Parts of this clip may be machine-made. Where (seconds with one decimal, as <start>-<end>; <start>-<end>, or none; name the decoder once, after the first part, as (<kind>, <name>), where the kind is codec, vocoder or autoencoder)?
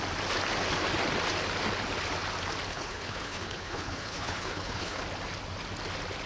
2.7-5.0 (codec, HILCodec)